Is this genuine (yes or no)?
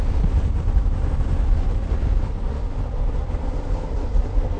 yes